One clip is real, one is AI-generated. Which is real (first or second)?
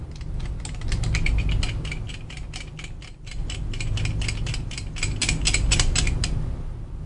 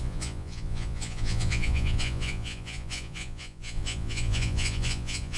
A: first